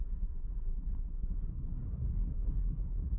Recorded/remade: remade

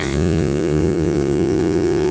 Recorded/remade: remade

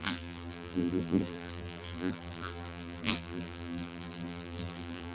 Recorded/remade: remade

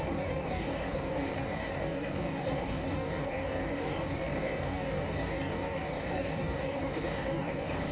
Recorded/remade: remade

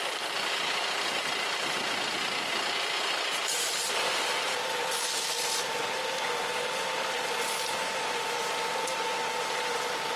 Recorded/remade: recorded